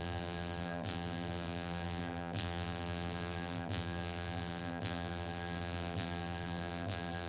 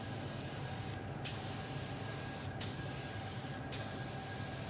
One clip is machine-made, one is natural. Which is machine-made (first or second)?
first